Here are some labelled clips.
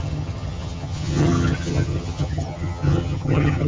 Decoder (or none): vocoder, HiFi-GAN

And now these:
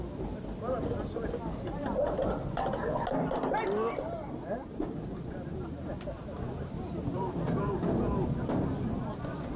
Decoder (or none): none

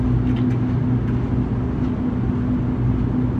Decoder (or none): none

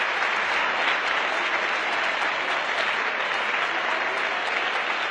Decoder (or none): none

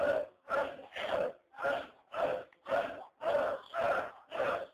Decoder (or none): none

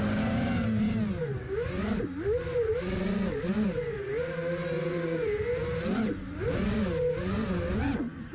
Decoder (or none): none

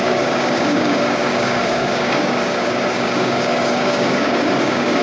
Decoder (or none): codec, DAC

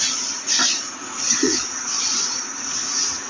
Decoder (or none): vocoder, Vocos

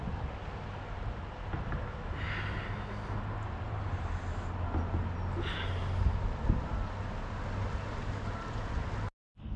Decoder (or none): none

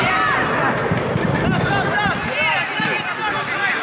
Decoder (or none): none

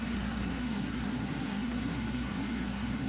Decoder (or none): codec, SNAC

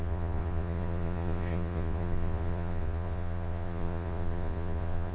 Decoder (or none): vocoder, Vocos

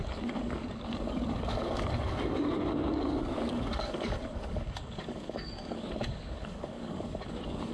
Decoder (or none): codec, DAC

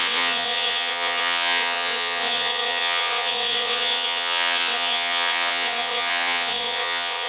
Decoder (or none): vocoder, WaveNeXt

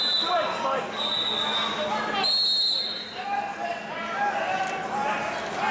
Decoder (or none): none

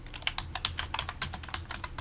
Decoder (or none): none